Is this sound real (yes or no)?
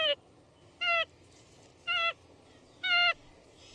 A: yes